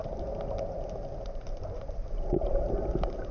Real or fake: real